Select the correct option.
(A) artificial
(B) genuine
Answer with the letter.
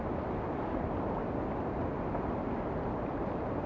B